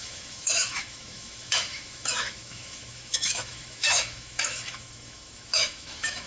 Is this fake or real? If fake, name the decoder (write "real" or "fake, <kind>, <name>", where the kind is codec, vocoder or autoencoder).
fake, autoencoder, DAC-VAE